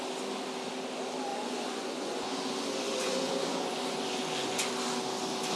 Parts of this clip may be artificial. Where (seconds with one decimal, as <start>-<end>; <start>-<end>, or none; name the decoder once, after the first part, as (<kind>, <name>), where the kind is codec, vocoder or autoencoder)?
1.3-4.7 (vocoder, Vocos)